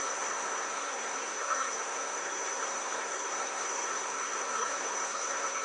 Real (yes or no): no